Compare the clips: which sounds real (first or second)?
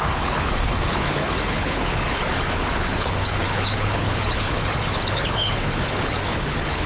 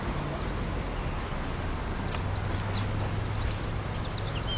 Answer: second